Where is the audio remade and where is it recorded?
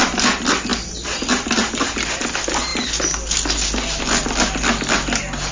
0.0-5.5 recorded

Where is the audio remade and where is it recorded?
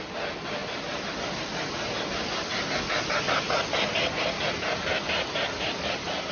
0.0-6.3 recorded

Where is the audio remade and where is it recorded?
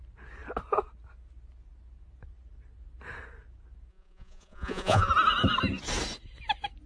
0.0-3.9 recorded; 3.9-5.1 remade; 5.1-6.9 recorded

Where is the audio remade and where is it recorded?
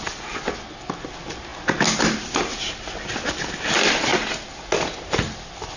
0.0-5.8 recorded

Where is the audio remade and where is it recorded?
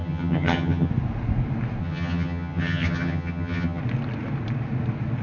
0.0-0.9 remade; 0.9-1.8 recorded; 1.8-3.8 remade; 3.8-5.2 recorded